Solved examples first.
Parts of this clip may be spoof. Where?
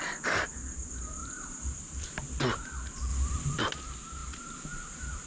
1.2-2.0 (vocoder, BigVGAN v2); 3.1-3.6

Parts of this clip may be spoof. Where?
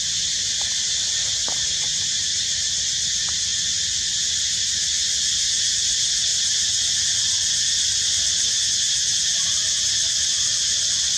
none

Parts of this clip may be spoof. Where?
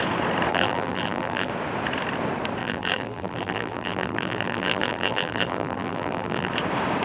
0.5-1.5 (vocoder, BigVGAN v2); 2.6-6.5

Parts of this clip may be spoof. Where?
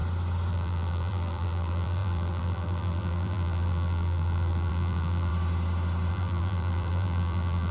0.5-5.3 (vocoder, BigVGAN v2); 6.1-7.7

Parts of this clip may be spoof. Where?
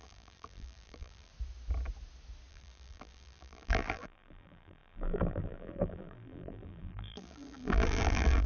0.0-1.3 (vocoder, BigVGAN v2); 2.5-8.5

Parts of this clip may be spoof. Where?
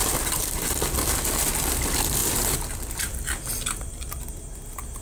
0.0-1.6 (vocoder, BigVGAN v2); 2.2-3.9